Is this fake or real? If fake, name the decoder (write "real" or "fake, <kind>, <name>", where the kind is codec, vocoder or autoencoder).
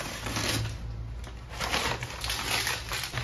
real